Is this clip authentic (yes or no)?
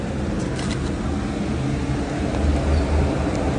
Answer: yes